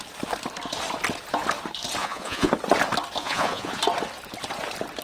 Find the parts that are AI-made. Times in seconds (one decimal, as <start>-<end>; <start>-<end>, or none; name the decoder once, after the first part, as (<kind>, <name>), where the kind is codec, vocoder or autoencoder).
2.0-2.5 (vocoder, Vocos); 3.2-3.8